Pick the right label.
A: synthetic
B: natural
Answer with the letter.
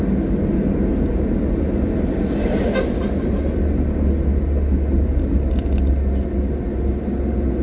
B